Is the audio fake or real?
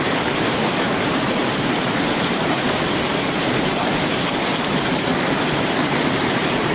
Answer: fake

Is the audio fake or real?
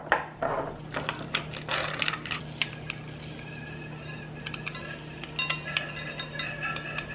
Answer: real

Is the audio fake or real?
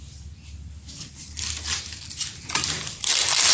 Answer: real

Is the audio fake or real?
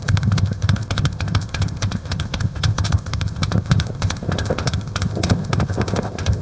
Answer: fake